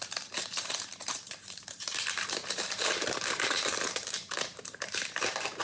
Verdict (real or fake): fake